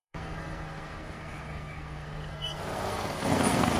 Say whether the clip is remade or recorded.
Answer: remade